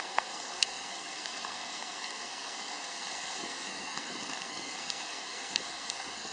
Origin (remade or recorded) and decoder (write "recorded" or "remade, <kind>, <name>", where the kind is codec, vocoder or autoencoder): remade, codec, SNAC